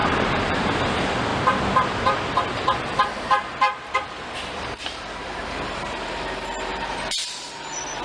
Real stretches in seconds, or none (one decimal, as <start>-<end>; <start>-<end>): 0.6-6.7; 7.5-8.0